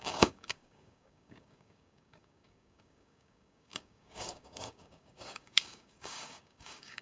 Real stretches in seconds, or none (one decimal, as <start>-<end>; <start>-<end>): none